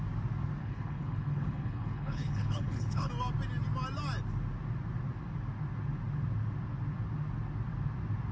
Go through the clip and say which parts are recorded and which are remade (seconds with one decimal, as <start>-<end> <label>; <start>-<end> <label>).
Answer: 0.0-0.6 recorded; 0.6-3.1 remade; 3.1-8.3 recorded